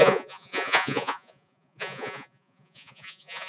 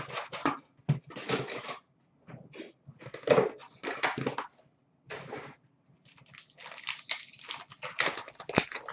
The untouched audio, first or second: second